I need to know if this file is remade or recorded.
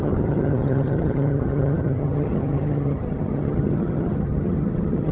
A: remade